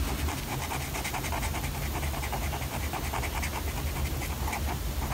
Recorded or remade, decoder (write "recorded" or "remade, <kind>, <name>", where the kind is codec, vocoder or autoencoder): recorded